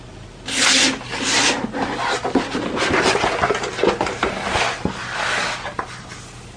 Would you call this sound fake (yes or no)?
no